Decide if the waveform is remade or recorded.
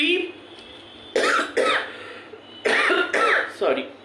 recorded